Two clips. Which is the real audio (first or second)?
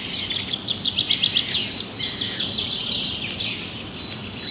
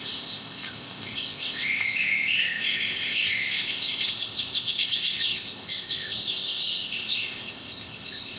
first